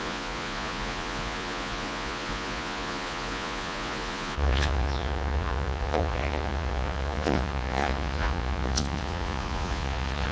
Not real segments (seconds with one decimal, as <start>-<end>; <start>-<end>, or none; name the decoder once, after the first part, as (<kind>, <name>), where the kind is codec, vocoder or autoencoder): 0.0-10.3 (vocoder, Vocos)